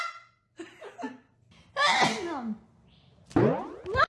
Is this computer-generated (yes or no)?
no